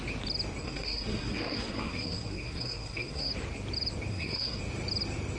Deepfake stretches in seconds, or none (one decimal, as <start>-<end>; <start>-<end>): 0.6-3.3; 4.1-4.6